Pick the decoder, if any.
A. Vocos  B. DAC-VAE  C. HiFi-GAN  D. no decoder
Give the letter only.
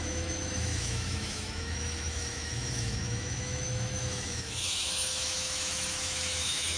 B